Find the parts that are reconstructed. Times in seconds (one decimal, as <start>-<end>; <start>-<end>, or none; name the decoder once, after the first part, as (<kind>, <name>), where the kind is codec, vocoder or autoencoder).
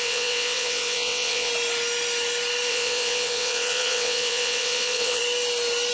0.0-1.5 (vocoder, WaveNeXt); 2.7-5.2